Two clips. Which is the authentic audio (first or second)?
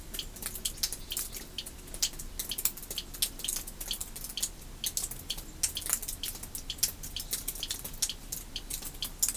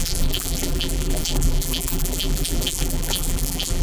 first